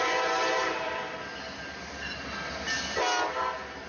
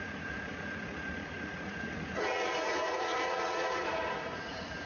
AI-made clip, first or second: second